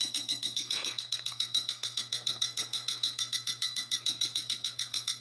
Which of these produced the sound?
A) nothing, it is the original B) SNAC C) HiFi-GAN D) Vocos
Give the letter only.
B